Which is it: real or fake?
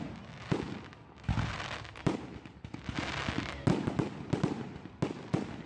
real